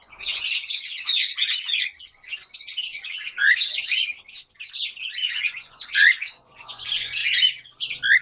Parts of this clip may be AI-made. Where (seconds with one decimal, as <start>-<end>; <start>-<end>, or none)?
0.0-3.7; 5.3-7.2